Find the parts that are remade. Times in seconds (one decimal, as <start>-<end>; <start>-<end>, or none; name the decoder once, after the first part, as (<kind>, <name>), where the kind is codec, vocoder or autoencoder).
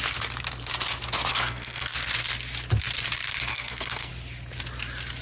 1.3-1.9 (codec, SNAC); 3.5-4.1